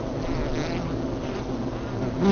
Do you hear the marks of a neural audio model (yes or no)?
no